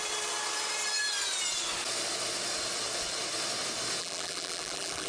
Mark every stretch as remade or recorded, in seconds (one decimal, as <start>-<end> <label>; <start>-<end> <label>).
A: 0.0-4.0 recorded; 4.0-5.1 remade